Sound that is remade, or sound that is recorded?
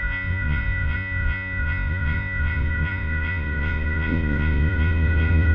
remade